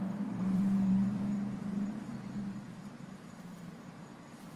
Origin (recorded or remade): remade